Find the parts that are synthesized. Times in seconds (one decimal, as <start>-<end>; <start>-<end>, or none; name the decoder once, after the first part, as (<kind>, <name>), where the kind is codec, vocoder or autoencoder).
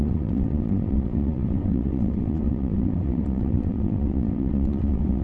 0.0-5.2 (vocoder, WaveNeXt)